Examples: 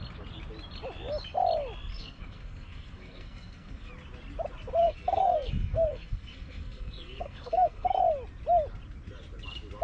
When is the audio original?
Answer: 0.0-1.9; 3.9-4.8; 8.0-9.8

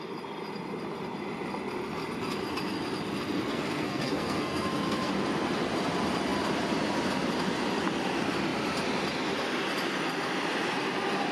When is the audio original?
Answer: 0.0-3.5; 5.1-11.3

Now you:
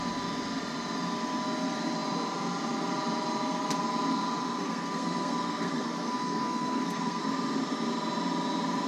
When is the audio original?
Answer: 0.0-4.6; 7.2-8.9